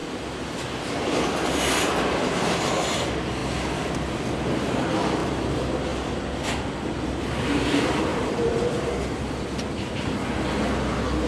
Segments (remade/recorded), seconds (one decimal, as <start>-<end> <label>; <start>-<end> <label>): 0.0-8.1 recorded; 8.1-8.9 remade; 8.9-11.3 recorded

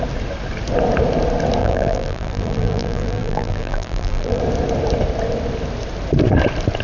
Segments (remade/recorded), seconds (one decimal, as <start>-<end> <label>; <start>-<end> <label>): 0.0-1.6 recorded; 1.6-4.4 remade; 4.4-6.8 recorded

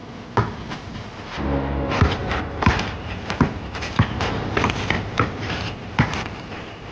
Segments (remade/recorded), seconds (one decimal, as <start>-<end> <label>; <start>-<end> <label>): 0.0-0.7 recorded; 0.7-6.9 remade

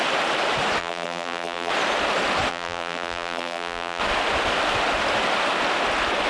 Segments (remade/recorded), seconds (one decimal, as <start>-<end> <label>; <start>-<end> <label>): 0.0-0.8 recorded; 0.8-1.7 remade; 1.7-2.5 recorded; 2.5-4.0 remade; 4.0-6.3 recorded

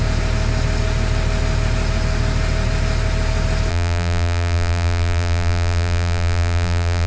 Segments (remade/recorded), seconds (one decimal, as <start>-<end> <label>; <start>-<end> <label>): 0.0-3.7 recorded; 3.7-7.1 remade

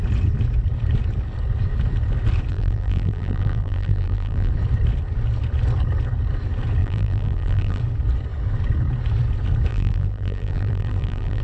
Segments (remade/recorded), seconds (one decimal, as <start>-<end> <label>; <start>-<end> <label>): 0.0-2.5 recorded; 2.5-4.5 remade; 4.5-6.8 recorded; 6.8-7.8 remade; 7.8-9.7 recorded; 9.7-11.4 remade